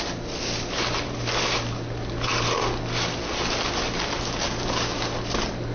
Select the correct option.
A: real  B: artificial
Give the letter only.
A